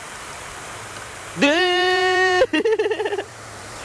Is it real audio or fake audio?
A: fake